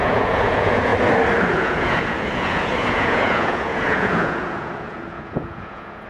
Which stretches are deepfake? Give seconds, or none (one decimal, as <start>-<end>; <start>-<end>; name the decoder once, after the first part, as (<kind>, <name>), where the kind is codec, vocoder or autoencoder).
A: 0.0-0.9 (vocoder, Vocos); 1.5-6.1